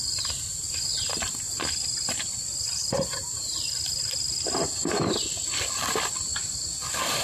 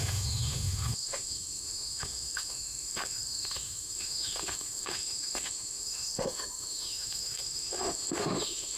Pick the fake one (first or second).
second